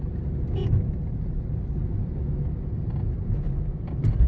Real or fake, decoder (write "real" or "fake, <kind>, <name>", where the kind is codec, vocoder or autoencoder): real